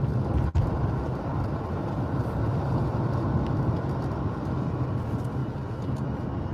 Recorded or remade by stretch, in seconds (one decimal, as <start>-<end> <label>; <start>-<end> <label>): 0.0-6.5 recorded